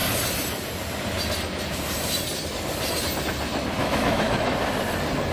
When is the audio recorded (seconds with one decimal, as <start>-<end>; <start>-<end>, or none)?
0.0-3.8; 4.5-5.3